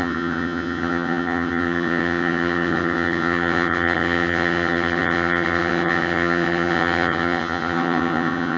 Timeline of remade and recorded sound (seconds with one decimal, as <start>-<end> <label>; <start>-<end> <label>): 0.0-8.6 remade

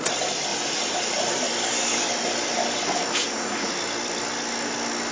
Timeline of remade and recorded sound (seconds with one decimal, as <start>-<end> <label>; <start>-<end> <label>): 0.0-3.2 recorded; 3.2-3.7 remade; 3.7-5.1 recorded

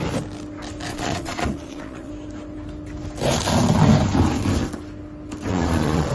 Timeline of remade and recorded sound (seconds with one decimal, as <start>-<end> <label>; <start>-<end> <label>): 0.0-0.9 recorded; 0.9-2.1 remade; 2.1-5.5 recorded; 5.5-6.1 remade

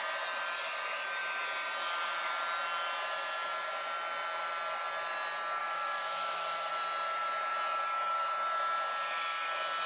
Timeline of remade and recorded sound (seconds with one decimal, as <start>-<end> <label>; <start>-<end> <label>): 0.0-5.6 recorded; 5.6-6.7 remade; 6.7-9.9 recorded

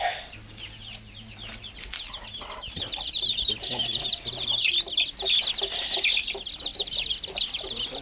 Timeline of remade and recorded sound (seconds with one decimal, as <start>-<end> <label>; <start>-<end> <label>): 0.0-8.0 recorded

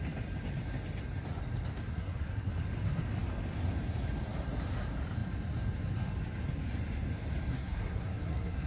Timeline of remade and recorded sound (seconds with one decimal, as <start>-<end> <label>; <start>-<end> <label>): 0.0-1.9 recorded; 1.9-2.5 remade; 2.5-7.5 recorded; 7.5-8.7 remade

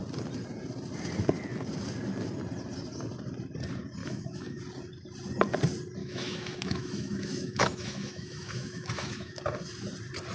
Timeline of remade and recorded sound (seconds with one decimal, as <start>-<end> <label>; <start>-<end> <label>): 0.0-4.0 recorded; 4.0-4.6 remade; 4.6-6.0 recorded; 6.0-9.4 remade; 9.4-10.3 recorded

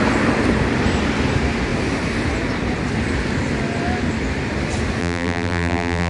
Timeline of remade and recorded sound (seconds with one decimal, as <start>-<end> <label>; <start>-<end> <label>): 0.0-5.0 recorded; 5.0-6.1 remade